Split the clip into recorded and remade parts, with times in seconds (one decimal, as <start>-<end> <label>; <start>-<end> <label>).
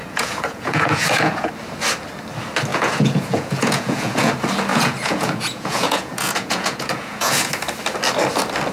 0.0-1.5 remade; 1.5-2.7 recorded; 2.7-4.3 remade; 4.3-4.7 recorded; 4.7-7.5 remade; 7.5-8.7 recorded